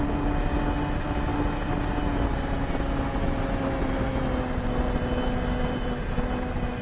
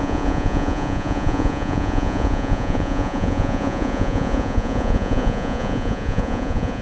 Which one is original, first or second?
first